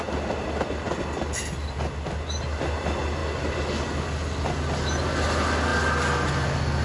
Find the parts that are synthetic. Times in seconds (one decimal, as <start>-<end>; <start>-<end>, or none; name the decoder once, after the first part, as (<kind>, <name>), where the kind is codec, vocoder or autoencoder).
none